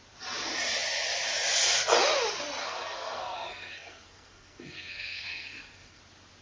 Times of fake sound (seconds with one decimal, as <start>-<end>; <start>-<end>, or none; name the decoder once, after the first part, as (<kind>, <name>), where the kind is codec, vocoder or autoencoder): 2.6-6.0 (codec, SNAC)